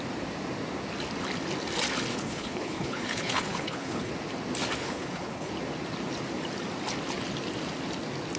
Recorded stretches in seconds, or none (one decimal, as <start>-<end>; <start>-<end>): 0.0-2.1; 4.1-4.8; 5.5-8.4